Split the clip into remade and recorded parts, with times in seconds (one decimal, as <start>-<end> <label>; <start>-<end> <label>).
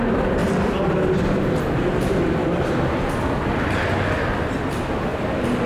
0.0-5.7 recorded